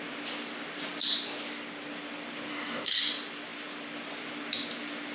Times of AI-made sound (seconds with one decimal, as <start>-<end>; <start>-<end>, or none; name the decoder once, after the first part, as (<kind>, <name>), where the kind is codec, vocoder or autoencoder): 2.5-3.0 (codec, DAC)

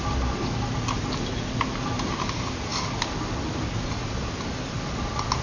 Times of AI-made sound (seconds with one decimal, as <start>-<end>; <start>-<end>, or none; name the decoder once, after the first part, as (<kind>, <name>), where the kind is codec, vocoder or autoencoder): none

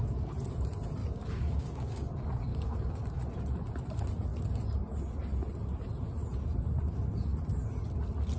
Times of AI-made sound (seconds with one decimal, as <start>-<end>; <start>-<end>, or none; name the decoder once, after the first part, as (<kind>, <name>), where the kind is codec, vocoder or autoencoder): 1.0-2.1 (codec, DAC); 2.5-3.0

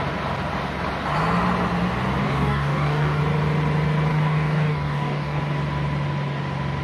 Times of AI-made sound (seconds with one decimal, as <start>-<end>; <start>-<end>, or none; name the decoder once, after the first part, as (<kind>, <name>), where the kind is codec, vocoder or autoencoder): 2.2-3.2 (codec, DAC); 4.1-5.4

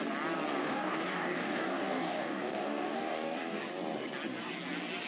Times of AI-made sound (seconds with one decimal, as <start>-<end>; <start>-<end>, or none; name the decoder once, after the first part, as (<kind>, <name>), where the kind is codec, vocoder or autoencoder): 0.6-3.6 (codec, DAC)

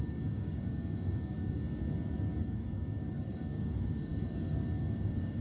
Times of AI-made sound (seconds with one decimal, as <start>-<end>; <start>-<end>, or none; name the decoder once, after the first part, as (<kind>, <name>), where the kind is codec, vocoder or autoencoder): 0.0-1.6 (codec, DAC); 2.4-5.4

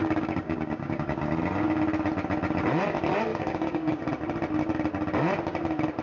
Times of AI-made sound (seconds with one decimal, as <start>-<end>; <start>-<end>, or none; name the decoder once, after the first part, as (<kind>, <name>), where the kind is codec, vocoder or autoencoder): 0.0-1.2 (codec, DAC); 3.3-4.0